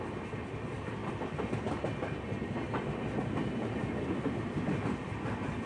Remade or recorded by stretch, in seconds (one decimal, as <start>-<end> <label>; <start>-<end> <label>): 0.0-5.7 recorded